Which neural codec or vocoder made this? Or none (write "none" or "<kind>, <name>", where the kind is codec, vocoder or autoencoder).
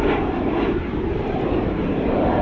vocoder, BigVGAN v2